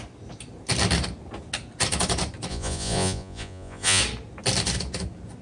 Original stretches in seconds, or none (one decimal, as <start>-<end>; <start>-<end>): 0.0-2.5; 4.0-5.4